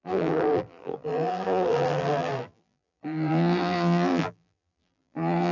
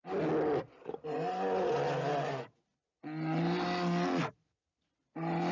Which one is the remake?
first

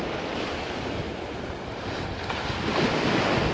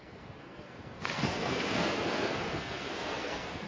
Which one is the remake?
second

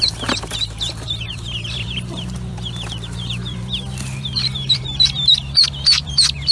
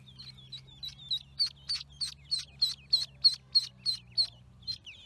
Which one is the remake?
first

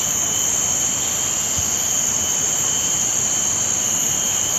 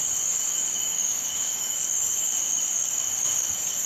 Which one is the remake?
second